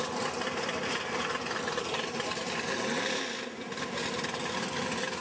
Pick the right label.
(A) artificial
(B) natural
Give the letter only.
B